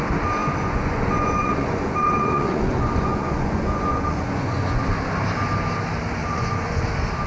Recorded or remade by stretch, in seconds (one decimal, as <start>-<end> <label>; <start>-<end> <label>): 0.0-0.4 recorded; 0.4-4.8 remade; 4.8-6.2 recorded; 6.2-6.8 remade; 6.8-7.3 recorded

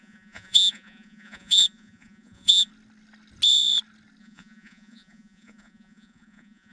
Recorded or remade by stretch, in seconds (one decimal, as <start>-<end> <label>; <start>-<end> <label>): 0.0-2.7 remade; 2.7-4.2 recorded; 4.2-6.7 remade

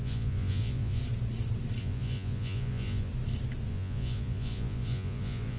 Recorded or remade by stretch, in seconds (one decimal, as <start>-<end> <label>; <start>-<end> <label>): 0.0-1.0 remade; 1.0-1.8 recorded; 1.8-3.1 remade; 3.1-3.7 recorded; 3.7-5.6 remade

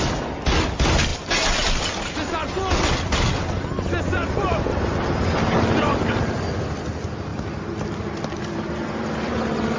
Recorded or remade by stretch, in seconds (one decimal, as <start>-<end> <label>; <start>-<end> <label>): 0.0-9.8 recorded

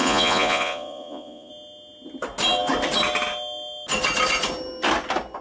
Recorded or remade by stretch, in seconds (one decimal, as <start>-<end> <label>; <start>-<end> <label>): 0.0-1.5 remade; 1.5-5.4 recorded

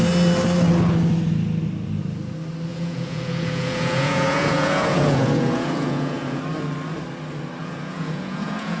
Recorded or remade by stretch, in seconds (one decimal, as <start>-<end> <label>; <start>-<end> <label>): 0.0-2.7 recorded; 2.7-6.4 remade; 6.4-7.6 recorded; 7.6-8.8 remade

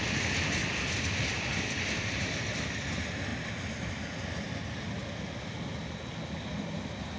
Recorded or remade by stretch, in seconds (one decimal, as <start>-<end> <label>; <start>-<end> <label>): 0.0-7.2 recorded

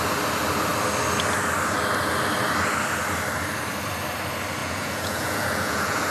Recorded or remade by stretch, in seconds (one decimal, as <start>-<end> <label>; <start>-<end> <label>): 0.0-4.6 recorded; 4.6-6.1 remade